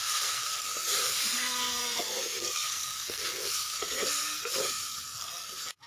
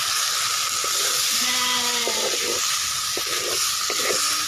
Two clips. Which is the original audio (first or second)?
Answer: second